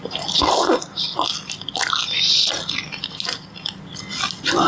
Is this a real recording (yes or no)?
yes